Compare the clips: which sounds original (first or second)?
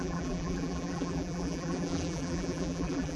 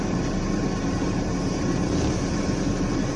second